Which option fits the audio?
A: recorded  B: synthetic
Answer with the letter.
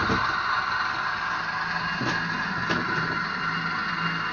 A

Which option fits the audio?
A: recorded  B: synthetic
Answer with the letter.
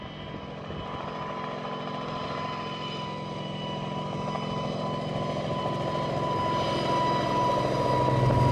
A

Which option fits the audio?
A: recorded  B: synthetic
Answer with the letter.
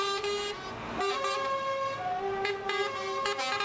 A